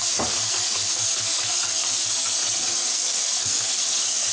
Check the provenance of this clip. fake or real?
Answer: fake